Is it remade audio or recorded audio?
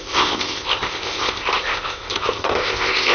remade